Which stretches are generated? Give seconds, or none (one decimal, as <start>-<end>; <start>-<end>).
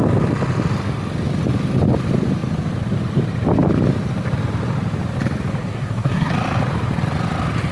5.6-6.3